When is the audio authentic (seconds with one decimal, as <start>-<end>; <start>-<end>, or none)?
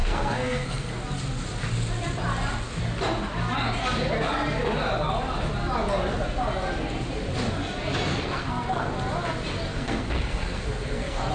0.9-8.1; 8.9-9.7